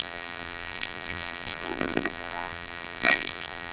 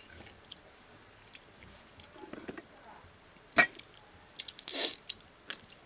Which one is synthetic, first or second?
first